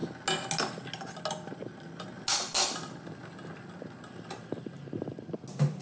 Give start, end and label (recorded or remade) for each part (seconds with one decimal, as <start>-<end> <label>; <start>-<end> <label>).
0.0-5.8 recorded